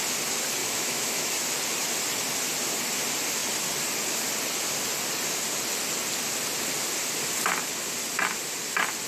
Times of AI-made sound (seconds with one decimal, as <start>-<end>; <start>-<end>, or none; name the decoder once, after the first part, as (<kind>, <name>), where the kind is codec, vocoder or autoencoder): 0.6-1.3 (autoencoder, DAC-VAE)